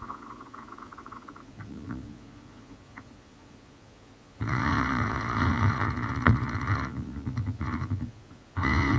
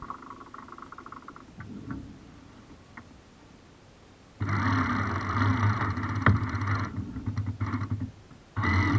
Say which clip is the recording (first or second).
second